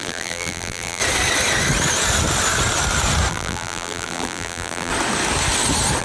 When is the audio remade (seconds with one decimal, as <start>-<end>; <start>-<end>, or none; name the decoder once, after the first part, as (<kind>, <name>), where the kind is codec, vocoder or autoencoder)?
0.0-1.0 (vocoder, BigVGAN v2); 3.3-4.9